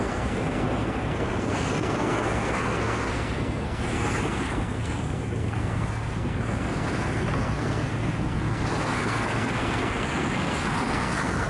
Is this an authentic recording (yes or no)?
no